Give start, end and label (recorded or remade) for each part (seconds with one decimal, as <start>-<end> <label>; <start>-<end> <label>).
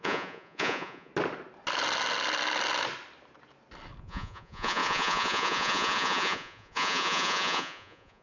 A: 0.0-1.1 remade; 1.1-4.0 recorded; 4.0-8.2 remade